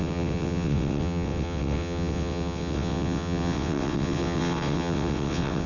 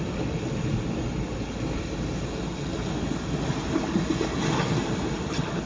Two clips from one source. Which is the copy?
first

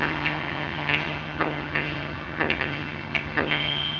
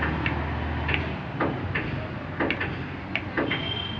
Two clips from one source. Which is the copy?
first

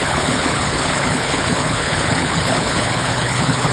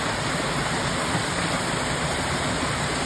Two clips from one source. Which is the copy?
first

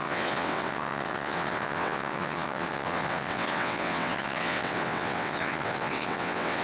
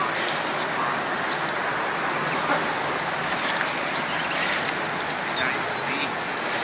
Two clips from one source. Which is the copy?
first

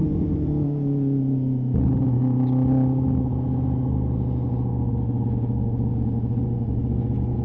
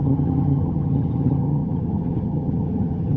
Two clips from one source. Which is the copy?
second